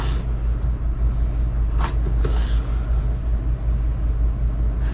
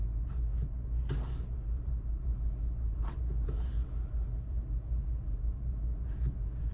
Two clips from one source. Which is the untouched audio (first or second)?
first